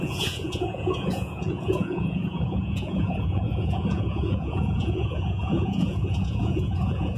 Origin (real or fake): fake